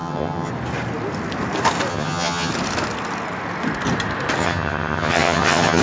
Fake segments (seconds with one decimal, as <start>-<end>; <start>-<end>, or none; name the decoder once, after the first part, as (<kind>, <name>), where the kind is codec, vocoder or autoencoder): 0.0-0.5 (vocoder, HiFi-GAN); 1.9-2.5; 4.4-5.8